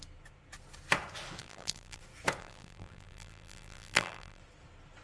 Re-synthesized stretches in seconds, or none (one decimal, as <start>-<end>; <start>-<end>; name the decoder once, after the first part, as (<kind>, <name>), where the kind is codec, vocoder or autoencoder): 1.4-2.0 (vocoder, BigVGAN v2); 2.4-4.4